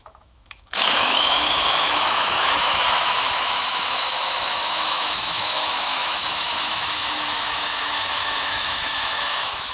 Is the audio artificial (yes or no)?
yes